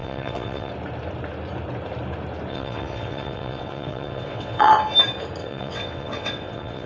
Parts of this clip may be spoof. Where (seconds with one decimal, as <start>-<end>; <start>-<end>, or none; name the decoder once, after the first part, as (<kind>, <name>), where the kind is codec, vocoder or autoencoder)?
0.0-0.7 (vocoder, WaveNeXt); 2.5-4.7; 5.4-6.9